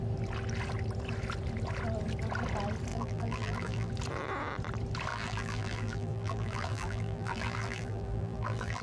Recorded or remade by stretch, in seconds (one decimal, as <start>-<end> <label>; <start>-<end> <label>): 0.0-2.9 recorded; 2.9-3.9 remade; 3.9-5.1 recorded; 5.1-8.8 remade

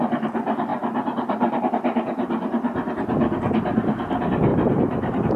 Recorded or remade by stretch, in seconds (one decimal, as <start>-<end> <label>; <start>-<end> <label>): 0.0-0.7 recorded; 0.7-1.7 remade; 1.7-4.5 recorded; 4.5-5.4 remade

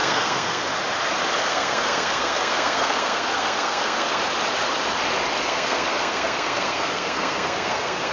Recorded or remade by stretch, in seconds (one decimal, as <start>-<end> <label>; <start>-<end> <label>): 0.0-0.7 remade; 0.7-1.4 recorded; 1.4-4.2 remade; 4.2-5.4 recorded; 5.4-8.1 remade

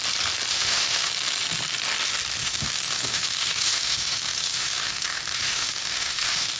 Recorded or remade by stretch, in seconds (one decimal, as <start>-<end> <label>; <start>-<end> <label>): 0.0-0.5 recorded; 0.5-1.1 remade; 1.1-2.4 recorded; 2.4-6.6 remade

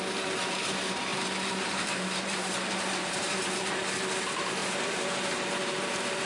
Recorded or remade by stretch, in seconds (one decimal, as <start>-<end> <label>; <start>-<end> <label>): 0.0-1.1 recorded; 1.1-3.7 remade; 3.7-4.6 recorded; 4.6-5.4 remade; 5.4-6.3 recorded

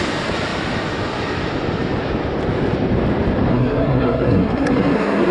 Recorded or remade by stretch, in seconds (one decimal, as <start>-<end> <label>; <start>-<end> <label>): 0.0-3.5 recorded; 3.5-5.3 remade

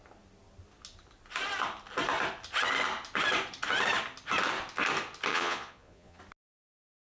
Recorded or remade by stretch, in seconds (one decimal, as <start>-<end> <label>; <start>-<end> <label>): 0.0-5.3 recorded; 5.3-6.2 remade; 6.2-7.1 recorded

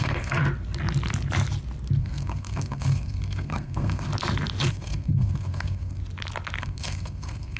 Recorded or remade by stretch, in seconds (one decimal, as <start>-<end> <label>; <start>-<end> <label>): 0.0-0.4 remade; 0.4-2.0 recorded; 2.0-4.1 remade; 4.1-4.7 recorded; 4.7-6.0 remade; 6.0-6.6 recorded; 6.6-7.6 remade